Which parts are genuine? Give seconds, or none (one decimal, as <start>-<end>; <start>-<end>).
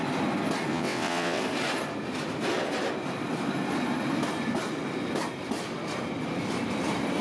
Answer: 0.0-0.7; 1.4-7.2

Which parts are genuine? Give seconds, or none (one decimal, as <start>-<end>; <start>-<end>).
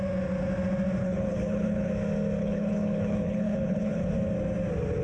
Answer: 0.0-1.0; 1.9-2.4; 4.1-5.0